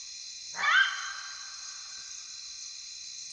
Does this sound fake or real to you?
real